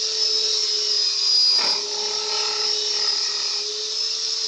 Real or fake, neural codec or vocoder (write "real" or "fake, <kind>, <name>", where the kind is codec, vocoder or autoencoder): real